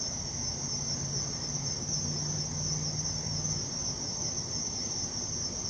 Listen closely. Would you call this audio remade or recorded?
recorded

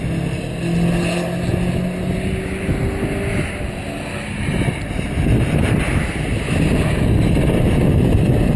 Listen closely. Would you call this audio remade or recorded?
recorded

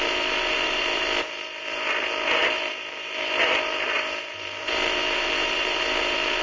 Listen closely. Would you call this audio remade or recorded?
remade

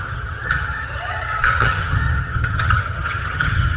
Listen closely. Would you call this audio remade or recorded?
remade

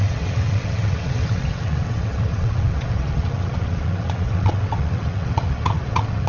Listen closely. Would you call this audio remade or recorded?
remade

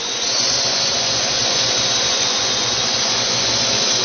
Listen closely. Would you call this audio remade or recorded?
remade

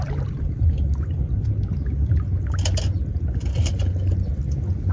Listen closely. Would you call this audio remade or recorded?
recorded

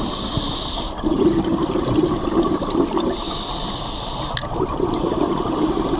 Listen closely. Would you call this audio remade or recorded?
recorded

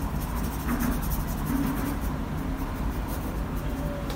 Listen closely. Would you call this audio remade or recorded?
recorded